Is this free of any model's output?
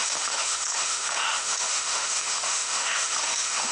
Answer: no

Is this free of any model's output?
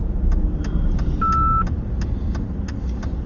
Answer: yes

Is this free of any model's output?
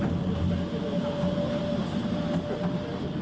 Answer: yes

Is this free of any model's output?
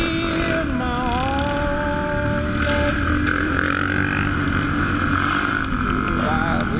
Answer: yes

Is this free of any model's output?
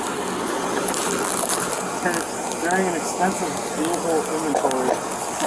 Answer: yes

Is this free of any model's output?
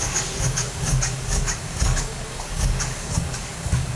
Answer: no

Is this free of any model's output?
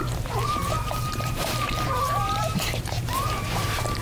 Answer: no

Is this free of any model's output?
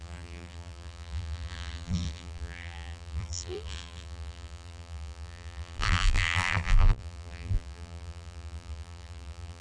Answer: no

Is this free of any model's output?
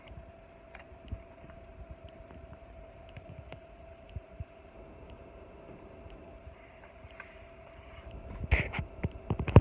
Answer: no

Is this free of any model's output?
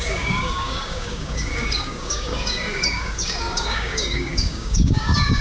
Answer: no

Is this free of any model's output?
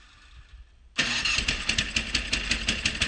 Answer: yes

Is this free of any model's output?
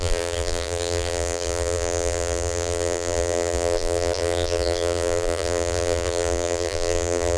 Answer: no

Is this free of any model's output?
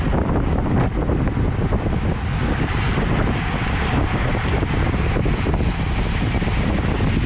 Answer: yes